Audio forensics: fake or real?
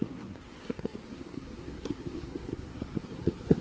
fake